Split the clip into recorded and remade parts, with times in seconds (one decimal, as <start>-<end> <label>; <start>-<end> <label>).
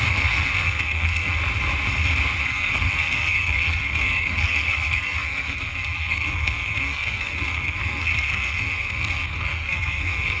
0.0-1.4 remade; 1.4-2.4 recorded; 2.4-10.4 remade